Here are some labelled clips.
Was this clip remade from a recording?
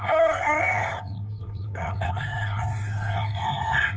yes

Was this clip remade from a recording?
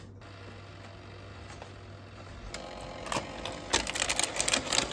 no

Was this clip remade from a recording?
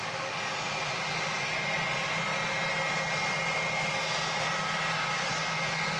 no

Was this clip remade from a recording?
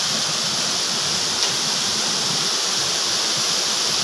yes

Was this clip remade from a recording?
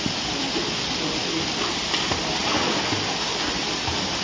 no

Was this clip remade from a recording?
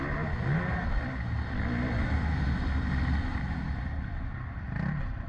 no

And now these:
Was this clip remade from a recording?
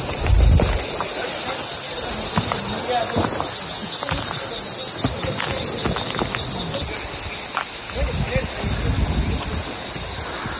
no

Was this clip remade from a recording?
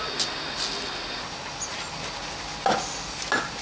no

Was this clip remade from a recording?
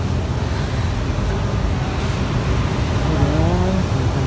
no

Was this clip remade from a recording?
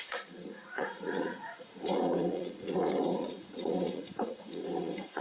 yes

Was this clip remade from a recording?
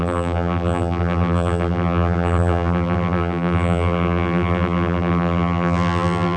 yes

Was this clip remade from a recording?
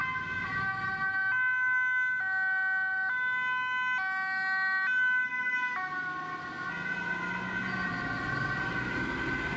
no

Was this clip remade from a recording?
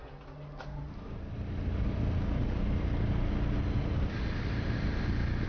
no